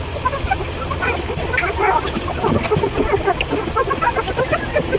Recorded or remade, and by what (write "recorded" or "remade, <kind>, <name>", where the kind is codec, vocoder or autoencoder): recorded